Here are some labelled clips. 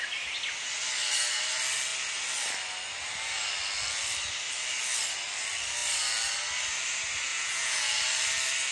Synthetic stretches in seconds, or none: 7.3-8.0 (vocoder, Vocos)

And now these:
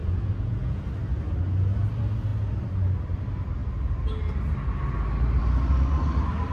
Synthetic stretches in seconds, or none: 0.0-0.8 (vocoder, Vocos)

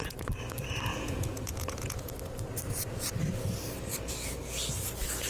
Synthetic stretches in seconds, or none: 0.9-2.1 (vocoder, Vocos)

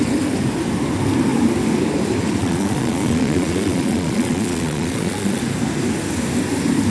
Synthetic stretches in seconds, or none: 2.4-5.4 (vocoder, Vocos)

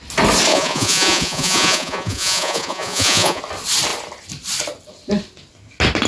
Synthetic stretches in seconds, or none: 0.5-3.4 (vocoder, Vocos)

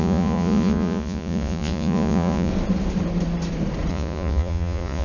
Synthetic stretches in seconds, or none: 0.0-2.5 (vocoder, Vocos); 3.9-5.0

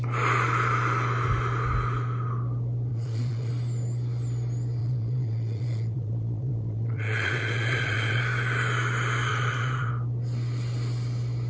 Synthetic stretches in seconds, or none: 2.9-3.5 (vocoder, Vocos); 4.8-8.2; 9.3-9.9

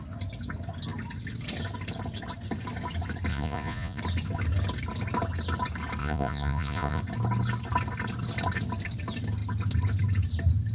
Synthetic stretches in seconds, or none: 3.3-4.0 (vocoder, Vocos); 6.0-7.0